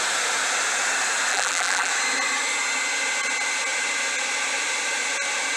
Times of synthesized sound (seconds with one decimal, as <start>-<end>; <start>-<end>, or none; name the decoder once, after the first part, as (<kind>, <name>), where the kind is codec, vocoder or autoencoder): 1.3-1.9 (vocoder, BigVGAN v2)